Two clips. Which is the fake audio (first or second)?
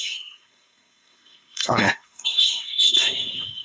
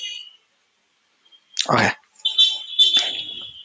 first